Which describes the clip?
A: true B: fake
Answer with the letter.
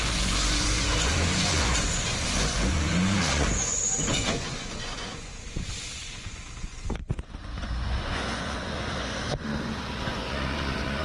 B